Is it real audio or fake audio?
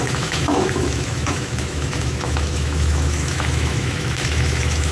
fake